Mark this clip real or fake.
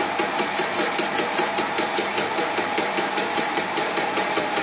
fake